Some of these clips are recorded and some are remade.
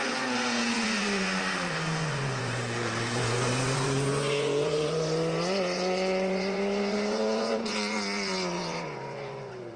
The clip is remade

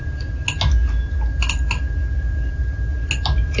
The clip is recorded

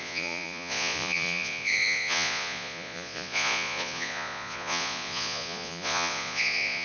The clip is remade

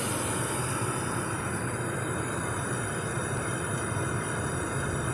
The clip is recorded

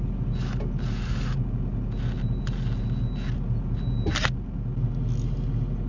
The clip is recorded